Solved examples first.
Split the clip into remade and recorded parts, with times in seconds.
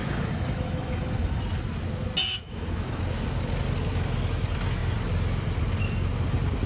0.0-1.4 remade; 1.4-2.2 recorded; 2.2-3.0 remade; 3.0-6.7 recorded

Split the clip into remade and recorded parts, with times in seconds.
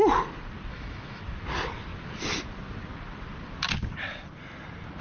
0.0-0.7 recorded; 0.7-1.2 remade; 1.2-5.0 recorded